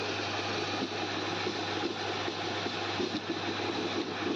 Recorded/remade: recorded